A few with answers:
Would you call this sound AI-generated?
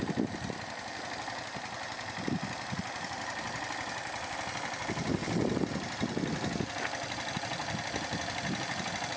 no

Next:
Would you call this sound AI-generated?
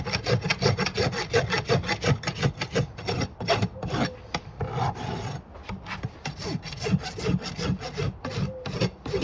no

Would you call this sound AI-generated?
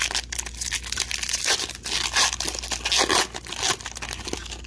no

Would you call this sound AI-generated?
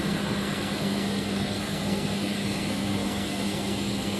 yes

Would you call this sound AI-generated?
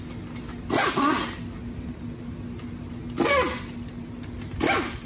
no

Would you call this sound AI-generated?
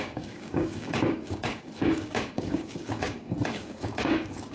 yes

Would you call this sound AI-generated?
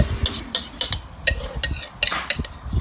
no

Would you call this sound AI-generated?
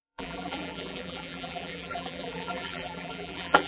yes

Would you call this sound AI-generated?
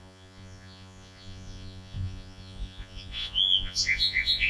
yes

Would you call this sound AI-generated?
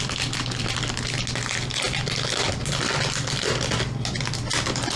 no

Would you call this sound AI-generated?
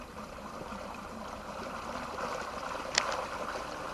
yes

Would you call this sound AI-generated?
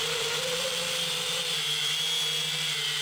no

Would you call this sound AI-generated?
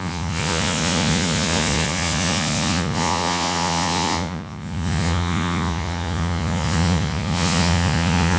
yes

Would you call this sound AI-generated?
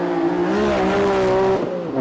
no